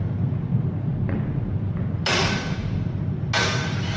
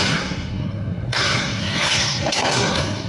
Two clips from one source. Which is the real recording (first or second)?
first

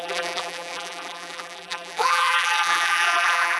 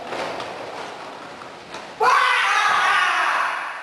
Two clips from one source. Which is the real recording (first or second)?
second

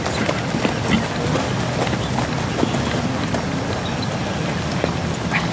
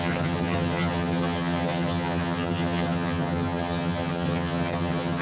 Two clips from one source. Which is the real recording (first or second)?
first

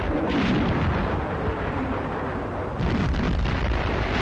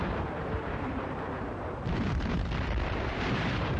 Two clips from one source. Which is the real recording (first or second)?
first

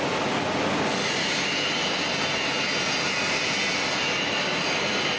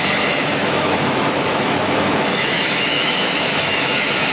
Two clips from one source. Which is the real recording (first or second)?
first